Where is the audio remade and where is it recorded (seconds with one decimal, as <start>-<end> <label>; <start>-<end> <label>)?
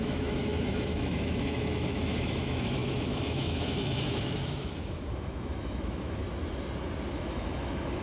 0.0-6.2 remade; 6.2-7.1 recorded; 7.1-8.0 remade